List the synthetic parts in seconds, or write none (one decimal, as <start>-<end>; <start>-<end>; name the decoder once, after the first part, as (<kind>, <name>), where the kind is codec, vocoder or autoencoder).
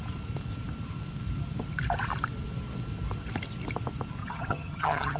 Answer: 4.2-5.2 (vocoder, HiFi-GAN)